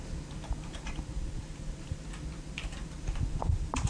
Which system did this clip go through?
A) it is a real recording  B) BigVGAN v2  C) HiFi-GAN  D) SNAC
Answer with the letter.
B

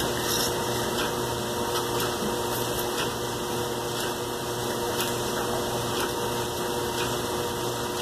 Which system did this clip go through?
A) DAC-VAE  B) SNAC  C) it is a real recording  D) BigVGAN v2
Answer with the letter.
C